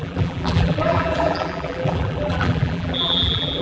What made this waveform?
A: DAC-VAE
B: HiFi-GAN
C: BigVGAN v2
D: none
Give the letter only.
C